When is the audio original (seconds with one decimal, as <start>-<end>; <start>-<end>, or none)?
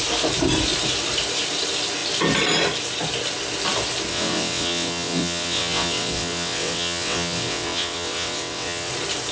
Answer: 0.0-4.1; 8.9-9.3